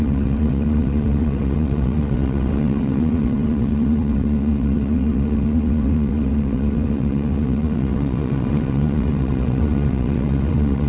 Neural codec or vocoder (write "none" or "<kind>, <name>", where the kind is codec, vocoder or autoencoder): vocoder, WaveNeXt